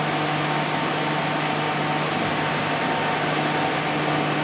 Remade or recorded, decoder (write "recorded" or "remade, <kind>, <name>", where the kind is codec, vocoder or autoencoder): recorded